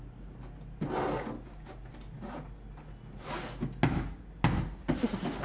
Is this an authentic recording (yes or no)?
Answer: yes